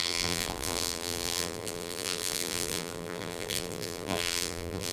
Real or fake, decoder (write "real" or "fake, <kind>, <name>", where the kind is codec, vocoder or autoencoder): fake, vocoder, BigVGAN v2